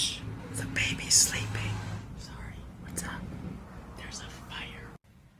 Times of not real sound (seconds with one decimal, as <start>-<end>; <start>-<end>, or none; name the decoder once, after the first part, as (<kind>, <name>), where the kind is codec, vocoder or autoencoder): none